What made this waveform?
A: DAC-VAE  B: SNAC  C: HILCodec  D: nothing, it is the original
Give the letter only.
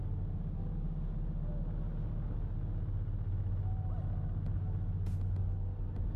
D